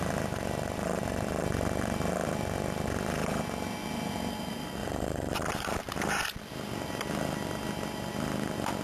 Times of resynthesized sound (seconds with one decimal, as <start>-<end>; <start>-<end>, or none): 4.8-5.9